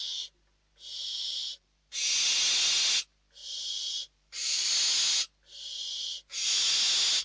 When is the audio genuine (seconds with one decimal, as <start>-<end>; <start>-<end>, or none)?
0.0-1.4; 1.9-3.4; 4.7-7.2